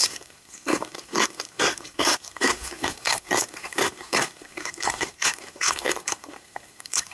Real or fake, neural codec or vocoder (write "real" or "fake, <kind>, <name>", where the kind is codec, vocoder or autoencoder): fake, codec, SNAC